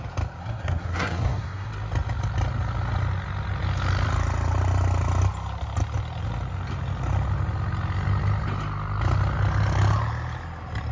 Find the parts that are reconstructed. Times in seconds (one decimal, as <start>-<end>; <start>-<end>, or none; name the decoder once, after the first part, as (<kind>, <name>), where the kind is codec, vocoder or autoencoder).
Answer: 0.4-1.7 (codec, SNAC)